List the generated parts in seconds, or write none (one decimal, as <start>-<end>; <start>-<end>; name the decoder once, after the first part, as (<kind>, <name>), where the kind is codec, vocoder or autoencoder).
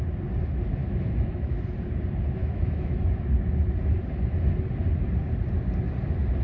0.8-1.6 (autoencoder, DAC-VAE); 2.4-3.0